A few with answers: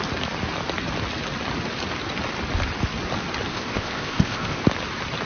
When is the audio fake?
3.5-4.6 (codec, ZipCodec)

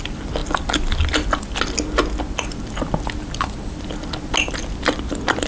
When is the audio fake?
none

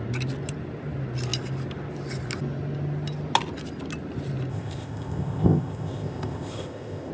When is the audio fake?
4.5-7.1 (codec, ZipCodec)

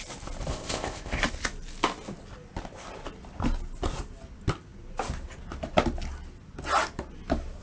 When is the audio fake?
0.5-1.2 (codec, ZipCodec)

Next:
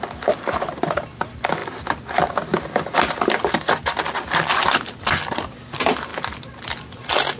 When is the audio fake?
none

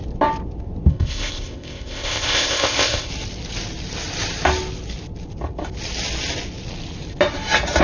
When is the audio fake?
0.9-3.1 (codec, ZipCodec)

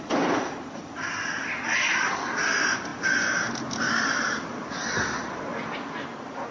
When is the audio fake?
none

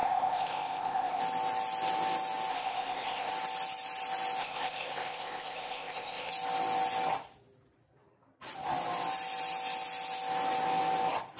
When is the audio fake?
0.0-1.2 (codec, ZipCodec); 2.5-3.3; 4.4-6.3